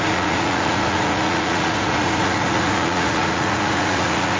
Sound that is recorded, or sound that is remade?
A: remade